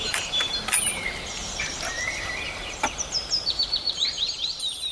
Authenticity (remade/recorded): remade